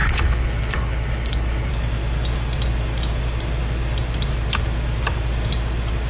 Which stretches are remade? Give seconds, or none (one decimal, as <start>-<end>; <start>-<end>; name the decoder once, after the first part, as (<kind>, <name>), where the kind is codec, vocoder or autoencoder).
0.0-1.7 (codec, HILCodec)

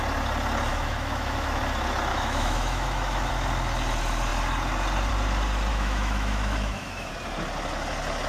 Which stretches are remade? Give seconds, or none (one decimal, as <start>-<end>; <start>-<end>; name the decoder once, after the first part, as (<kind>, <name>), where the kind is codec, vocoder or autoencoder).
0.7-1.6 (autoencoder, DAC-VAE); 2.1-3.3; 5.7-7.1

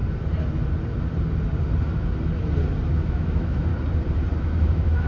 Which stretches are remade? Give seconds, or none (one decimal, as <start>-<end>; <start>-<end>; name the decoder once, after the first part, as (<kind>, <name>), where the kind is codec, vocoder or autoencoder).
3.1-3.7 (autoencoder, DAC-VAE); 4.4-5.1

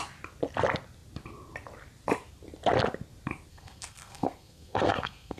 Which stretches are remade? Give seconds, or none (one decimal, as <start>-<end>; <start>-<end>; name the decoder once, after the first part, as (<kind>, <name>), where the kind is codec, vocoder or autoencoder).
3.5-5.4 (codec, SNAC)

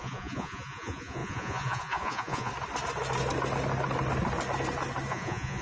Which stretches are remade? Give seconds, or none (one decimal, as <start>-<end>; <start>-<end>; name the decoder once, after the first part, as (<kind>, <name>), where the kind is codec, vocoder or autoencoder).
0.0-2.5 (vocoder, Vocos); 5.1-5.6

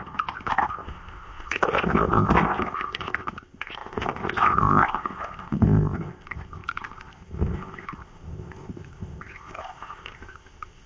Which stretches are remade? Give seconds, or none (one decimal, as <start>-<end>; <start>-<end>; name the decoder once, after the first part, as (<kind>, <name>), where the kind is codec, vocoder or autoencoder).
0.0-10.9 (codec, ZipCodec)